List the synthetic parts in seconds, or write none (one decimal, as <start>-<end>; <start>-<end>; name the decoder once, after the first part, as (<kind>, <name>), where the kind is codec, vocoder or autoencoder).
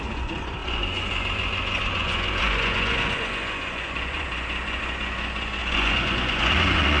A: 0.0-7.0 (vocoder, Vocos)